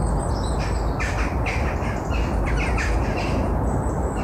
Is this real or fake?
real